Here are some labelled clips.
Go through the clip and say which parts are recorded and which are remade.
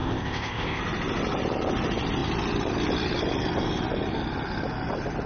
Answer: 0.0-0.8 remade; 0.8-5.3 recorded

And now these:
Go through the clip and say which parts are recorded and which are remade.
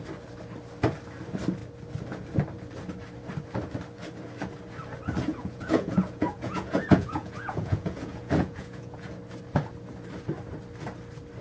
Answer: 0.0-5.3 recorded; 5.3-9.1 remade; 9.1-11.4 recorded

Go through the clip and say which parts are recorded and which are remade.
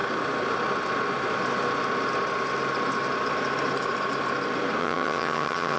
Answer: 0.0-4.8 recorded; 4.8-5.8 remade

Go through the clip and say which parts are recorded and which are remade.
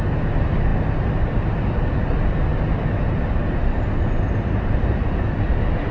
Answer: 0.0-5.9 recorded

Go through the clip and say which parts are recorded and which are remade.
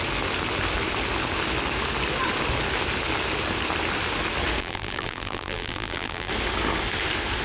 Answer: 0.0-4.6 recorded; 4.6-6.3 remade; 6.3-7.4 recorded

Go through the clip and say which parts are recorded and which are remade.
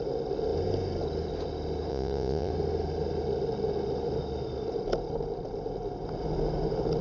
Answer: 0.0-1.9 recorded; 1.9-2.5 remade; 2.5-7.0 recorded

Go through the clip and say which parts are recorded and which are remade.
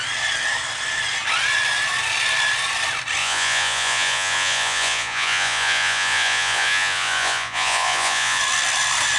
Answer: 0.0-3.2 recorded; 3.2-8.4 remade; 8.4-9.2 recorded